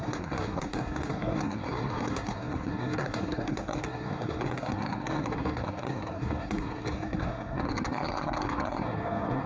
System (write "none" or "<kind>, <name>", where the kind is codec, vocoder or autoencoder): codec, SNAC